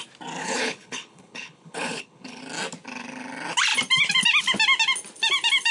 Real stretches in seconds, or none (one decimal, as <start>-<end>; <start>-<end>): 0.0-0.4; 2.4-5.7